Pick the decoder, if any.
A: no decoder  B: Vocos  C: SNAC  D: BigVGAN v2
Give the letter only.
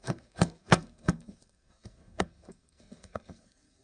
C